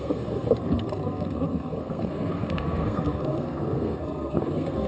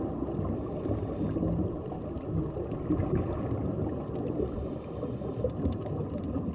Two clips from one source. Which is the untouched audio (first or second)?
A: second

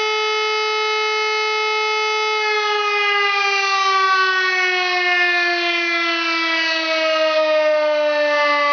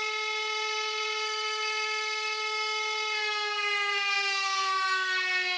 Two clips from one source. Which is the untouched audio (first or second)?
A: first